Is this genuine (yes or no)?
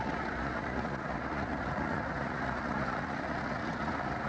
no